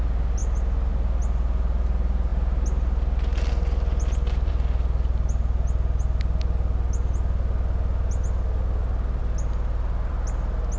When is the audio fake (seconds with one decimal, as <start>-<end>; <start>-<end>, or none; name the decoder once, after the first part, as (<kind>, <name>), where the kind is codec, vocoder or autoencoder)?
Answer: none

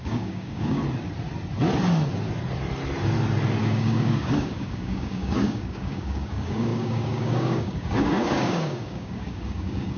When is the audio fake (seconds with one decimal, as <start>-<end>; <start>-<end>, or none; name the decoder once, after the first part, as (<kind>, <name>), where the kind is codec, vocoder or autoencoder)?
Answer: 0.0-0.8 (codec, DAC); 3.6-10.0

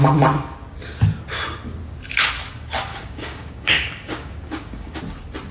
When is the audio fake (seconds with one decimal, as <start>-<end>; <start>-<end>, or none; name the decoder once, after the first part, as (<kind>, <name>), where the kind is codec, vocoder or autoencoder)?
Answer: 2.9-5.0 (codec, DAC)

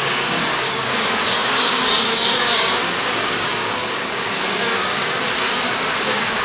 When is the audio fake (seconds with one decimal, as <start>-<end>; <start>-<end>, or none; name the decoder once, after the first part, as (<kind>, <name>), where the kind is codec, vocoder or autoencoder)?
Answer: 0.0-6.4 (codec, DAC)

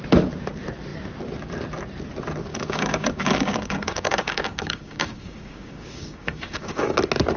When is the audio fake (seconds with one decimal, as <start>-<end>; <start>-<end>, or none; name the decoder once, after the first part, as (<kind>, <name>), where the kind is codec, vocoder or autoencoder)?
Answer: 2.5-6.9 (codec, DAC)

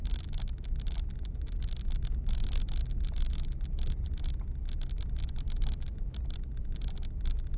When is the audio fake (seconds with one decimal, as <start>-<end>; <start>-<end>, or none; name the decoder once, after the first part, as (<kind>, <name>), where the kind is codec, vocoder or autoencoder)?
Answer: none

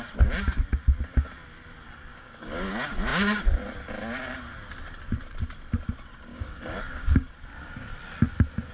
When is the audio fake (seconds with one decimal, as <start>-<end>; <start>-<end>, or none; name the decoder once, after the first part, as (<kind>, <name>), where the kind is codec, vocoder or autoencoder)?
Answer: 2.1-2.7 (codec, DAC); 6.3-7.3